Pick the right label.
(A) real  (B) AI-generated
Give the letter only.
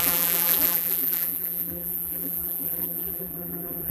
B